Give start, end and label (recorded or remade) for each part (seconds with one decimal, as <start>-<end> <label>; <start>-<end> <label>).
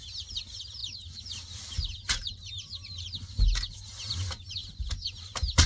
0.0-5.7 recorded